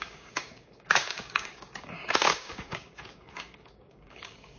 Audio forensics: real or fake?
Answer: fake